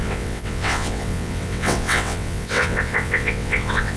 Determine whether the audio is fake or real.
fake